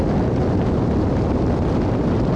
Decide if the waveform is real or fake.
real